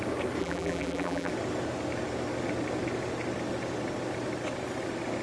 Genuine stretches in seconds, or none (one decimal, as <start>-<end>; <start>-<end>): 0.0-0.4; 1.3-5.2